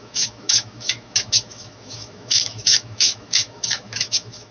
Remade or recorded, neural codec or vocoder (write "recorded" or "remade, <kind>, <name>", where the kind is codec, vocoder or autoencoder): remade, autoencoder, DAC-VAE